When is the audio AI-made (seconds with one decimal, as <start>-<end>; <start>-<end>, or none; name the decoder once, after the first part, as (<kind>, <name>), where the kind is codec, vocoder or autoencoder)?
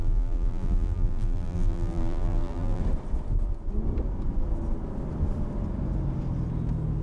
0.0-2.8 (vocoder, BigVGAN v2)